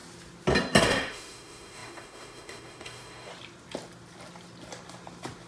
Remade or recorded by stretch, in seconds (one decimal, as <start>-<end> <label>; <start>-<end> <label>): 0.0-0.8 recorded; 0.8-3.3 remade; 3.3-5.5 recorded

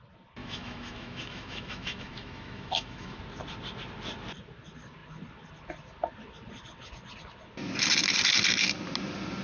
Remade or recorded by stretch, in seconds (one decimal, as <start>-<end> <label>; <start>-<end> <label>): 0.0-0.4 recorded; 0.4-3.2 remade; 3.2-9.4 recorded

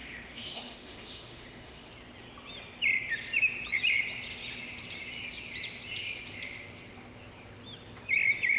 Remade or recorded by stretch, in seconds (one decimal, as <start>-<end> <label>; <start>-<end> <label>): 0.0-1.9 remade; 1.9-8.6 recorded

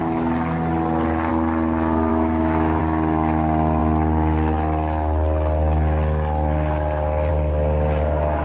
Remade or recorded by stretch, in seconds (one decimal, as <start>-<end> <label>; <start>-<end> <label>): 0.0-2.1 recorded; 2.1-2.8 remade; 2.8-8.4 recorded

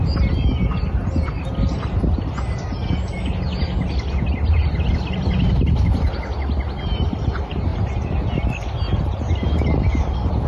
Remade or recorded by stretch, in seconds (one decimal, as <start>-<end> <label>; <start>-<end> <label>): 0.0-10.5 recorded